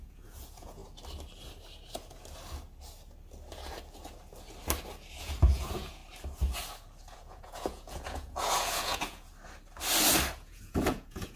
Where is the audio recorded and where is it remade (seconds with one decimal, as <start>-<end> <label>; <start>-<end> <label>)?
0.0-0.8 remade; 0.8-5.2 recorded; 5.2-6.0 remade; 6.0-7.0 recorded; 7.0-9.3 remade; 9.3-10.3 recorded; 10.3-11.4 remade